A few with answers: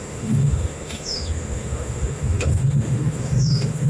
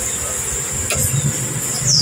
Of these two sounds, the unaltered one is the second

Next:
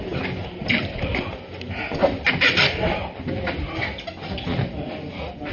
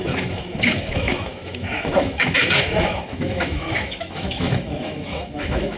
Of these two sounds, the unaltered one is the first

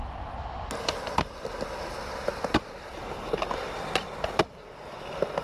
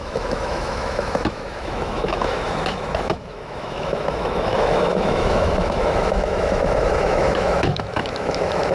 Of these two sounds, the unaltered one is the first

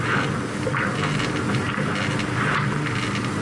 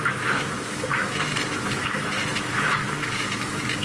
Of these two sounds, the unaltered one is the first